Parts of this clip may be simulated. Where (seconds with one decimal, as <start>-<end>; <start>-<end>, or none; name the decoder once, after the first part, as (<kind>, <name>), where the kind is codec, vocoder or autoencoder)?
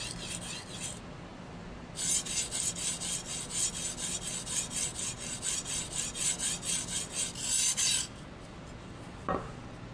none